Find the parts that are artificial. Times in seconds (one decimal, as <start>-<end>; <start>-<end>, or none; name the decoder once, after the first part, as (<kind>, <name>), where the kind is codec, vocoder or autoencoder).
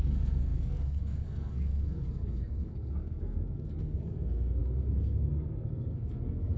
0.0-6.6 (codec, SNAC)